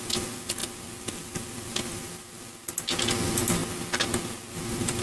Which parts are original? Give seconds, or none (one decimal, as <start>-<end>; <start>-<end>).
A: 0.0-5.0